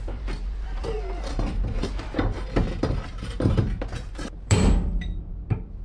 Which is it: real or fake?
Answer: fake